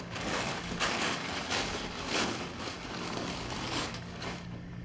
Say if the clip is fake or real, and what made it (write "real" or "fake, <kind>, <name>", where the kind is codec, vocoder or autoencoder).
fake, codec, DAC